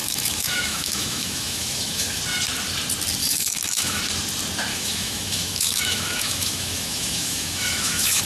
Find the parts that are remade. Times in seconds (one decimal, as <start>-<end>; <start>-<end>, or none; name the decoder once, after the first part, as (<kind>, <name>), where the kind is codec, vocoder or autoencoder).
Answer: 0.0-2.2 (autoencoder, DAC-VAE); 3.2-4.0; 4.7-8.2